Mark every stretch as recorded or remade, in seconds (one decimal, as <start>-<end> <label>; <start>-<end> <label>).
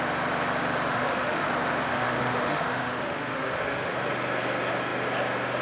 0.0-0.9 recorded; 0.9-1.5 remade; 1.5-1.9 recorded; 1.9-4.1 remade; 4.1-5.6 recorded